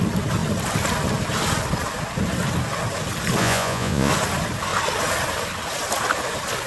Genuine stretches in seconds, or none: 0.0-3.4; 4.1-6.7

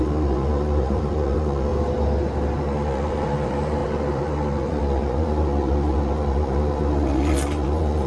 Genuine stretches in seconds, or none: 1.7-2.6

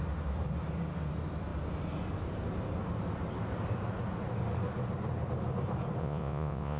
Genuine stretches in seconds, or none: 0.0-6.0

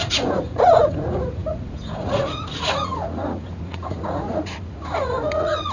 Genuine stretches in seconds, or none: none